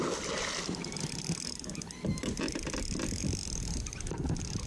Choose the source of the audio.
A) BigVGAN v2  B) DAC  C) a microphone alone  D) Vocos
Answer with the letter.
C